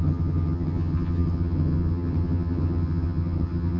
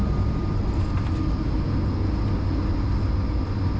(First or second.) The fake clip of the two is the first